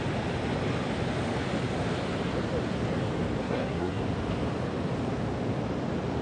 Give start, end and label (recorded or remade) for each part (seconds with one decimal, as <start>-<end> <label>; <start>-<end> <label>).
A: 0.0-3.4 recorded; 3.4-4.0 remade; 4.0-6.2 recorded